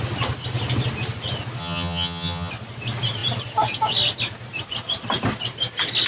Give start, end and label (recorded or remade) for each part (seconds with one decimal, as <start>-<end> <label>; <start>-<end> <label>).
0.0-1.6 recorded; 1.6-2.5 remade; 2.5-6.1 recorded